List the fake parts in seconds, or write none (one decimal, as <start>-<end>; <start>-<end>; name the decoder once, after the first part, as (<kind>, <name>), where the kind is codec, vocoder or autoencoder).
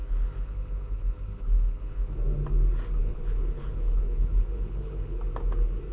0.0-2.1 (codec, HILCodec); 3.0-5.2